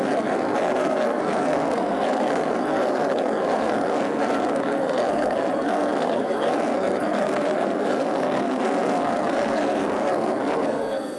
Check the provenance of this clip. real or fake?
fake